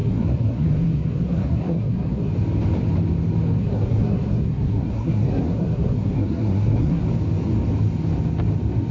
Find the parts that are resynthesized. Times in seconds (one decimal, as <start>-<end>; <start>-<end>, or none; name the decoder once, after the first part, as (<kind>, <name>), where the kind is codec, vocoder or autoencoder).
0.0-2.3 (codec, SNAC); 3.6-7.0